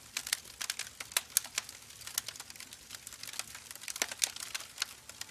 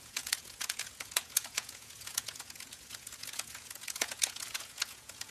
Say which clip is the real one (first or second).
first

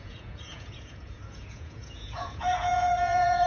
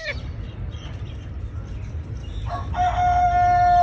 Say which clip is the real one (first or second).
second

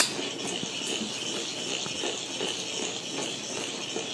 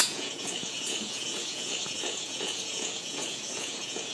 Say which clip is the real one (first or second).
first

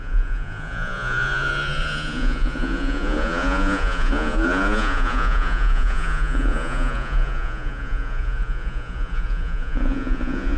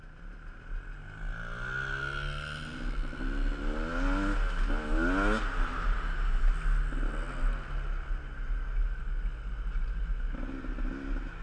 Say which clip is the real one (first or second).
second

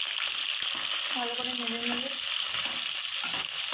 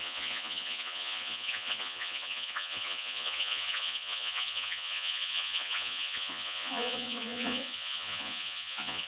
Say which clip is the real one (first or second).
first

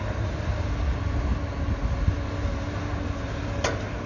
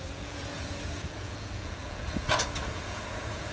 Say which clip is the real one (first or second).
first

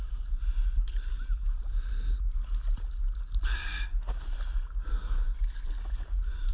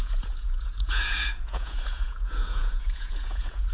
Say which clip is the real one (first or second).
first